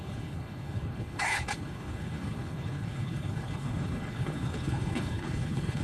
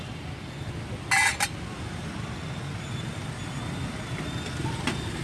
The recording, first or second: second